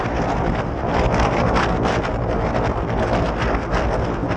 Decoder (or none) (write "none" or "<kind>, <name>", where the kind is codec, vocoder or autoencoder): none